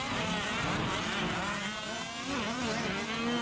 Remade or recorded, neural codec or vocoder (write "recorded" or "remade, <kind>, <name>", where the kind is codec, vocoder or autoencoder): recorded